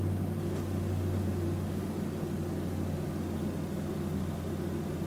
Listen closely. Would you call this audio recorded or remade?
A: recorded